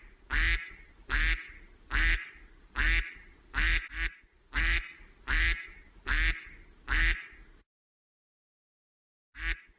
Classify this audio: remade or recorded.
recorded